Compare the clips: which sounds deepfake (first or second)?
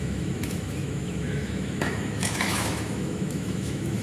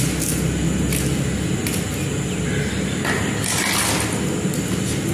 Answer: first